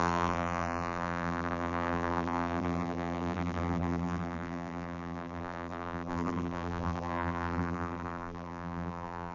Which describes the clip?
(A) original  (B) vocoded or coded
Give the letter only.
B